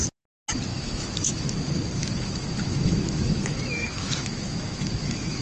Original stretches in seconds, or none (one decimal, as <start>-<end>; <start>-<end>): 0.0-0.7; 1.5-2.0